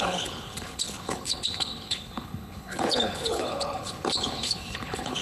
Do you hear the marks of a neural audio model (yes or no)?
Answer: yes